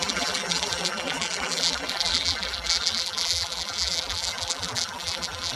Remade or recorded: remade